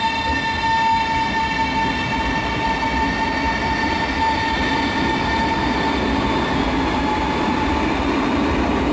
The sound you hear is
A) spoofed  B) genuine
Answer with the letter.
B